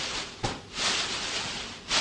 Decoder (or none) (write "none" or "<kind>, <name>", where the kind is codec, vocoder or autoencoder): none